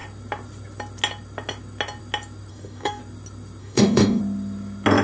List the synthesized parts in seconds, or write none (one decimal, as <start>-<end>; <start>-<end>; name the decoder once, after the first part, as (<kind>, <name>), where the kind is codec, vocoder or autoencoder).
2.5-3.0 (codec, DAC); 3.6-4.2